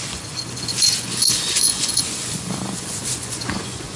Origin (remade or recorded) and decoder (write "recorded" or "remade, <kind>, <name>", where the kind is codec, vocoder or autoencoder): remade, vocoder, Vocos